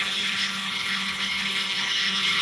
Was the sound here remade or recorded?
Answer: remade